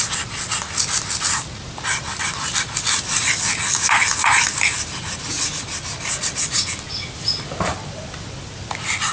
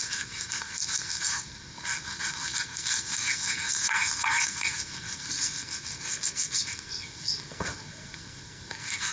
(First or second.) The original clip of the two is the first